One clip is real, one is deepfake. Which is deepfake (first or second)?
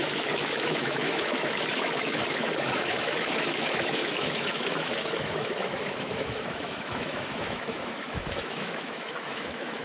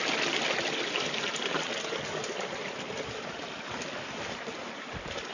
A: first